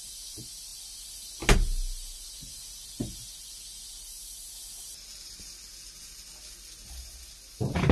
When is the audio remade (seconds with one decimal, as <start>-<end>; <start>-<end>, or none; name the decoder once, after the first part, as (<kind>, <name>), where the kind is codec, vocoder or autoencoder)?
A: none